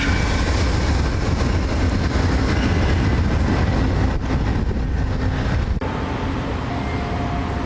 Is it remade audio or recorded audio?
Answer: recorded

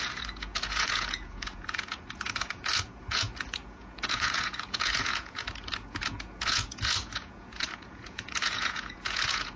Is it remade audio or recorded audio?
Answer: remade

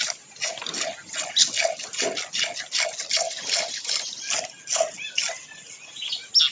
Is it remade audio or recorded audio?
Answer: recorded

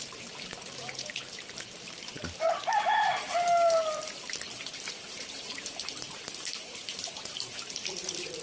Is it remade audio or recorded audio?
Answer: remade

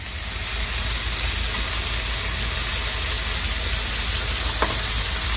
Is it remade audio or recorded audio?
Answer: recorded